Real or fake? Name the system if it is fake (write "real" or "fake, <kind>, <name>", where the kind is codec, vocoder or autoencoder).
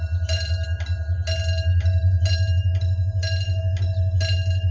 real